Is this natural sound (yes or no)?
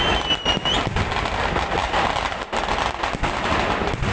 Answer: yes